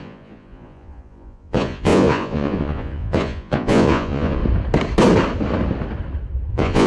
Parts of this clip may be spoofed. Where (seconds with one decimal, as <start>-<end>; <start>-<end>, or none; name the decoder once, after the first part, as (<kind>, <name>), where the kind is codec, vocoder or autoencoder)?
0.0-4.4 (vocoder, Vocos); 6.5-6.9